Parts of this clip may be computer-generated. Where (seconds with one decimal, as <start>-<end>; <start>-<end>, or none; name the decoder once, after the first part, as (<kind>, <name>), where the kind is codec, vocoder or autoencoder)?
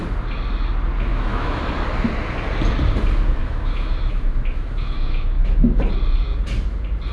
1.1-1.6 (autoencoder, DAC-VAE); 3.4-5.8